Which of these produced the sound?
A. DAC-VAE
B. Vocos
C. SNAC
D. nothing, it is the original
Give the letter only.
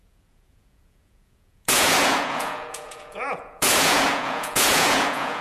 B